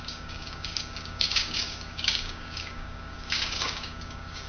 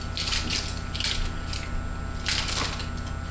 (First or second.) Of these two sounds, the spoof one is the first